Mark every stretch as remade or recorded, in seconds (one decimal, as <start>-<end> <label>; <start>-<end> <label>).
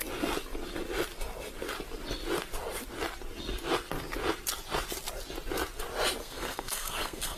0.0-6.2 recorded; 6.2-7.4 remade